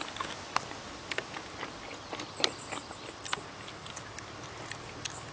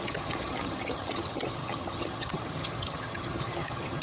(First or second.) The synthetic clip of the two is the second